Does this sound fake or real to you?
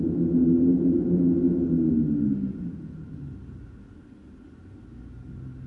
real